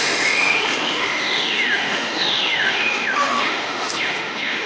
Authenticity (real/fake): fake